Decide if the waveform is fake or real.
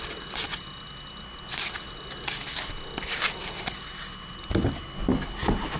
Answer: real